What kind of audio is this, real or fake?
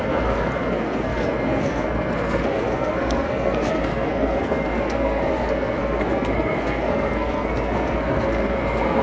fake